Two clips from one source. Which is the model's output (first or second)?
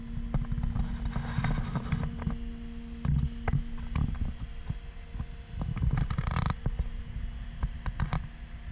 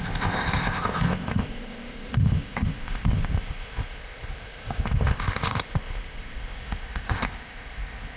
second